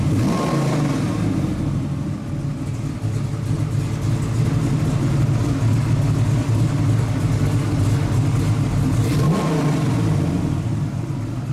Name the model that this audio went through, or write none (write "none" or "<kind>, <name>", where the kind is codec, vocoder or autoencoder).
none